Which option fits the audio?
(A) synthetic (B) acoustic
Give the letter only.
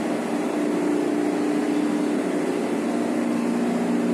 B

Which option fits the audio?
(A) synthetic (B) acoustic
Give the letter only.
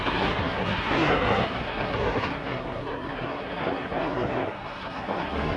A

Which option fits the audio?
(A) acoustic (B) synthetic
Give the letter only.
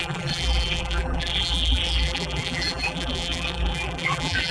B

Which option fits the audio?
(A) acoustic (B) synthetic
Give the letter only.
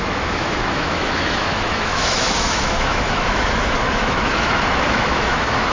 B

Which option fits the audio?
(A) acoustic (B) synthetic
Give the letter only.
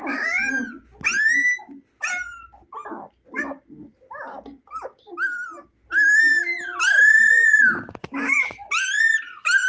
A